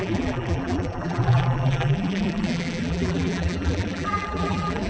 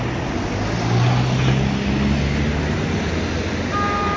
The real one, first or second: second